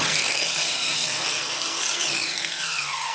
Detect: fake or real fake